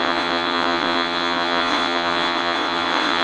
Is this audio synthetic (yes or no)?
yes